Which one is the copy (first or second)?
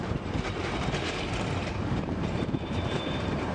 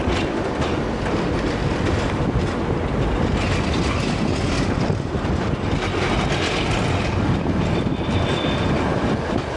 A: first